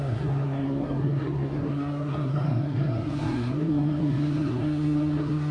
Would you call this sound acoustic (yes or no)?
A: no